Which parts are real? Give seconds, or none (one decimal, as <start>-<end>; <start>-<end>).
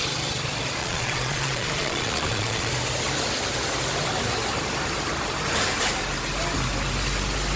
0.0-0.8; 2.7-7.6